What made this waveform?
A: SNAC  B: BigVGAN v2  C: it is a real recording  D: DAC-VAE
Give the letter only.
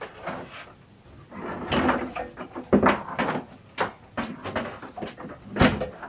C